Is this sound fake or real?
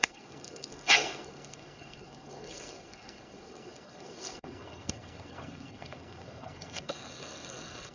fake